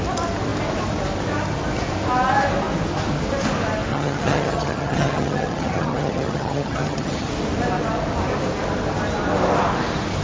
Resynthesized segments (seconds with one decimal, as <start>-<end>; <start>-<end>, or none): 3.9-7.3